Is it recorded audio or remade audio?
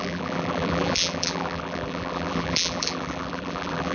remade